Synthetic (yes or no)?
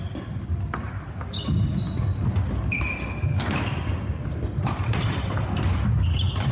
no